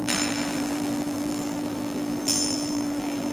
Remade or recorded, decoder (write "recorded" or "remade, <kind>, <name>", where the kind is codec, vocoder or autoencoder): remade, vocoder, BigVGAN v2